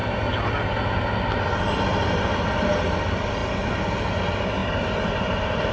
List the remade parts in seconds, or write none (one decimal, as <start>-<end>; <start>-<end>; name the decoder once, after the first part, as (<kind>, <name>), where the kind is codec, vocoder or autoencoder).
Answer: none